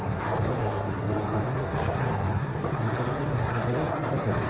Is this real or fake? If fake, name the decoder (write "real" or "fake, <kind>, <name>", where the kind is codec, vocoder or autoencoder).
fake, codec, SNAC